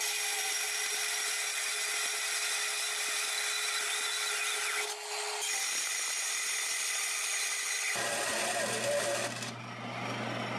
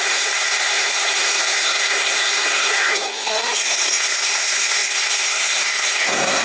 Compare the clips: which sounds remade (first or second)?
second